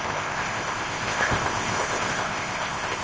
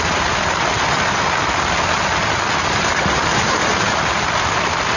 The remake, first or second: first